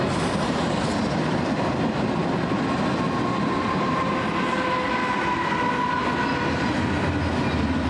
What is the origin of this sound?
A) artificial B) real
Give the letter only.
B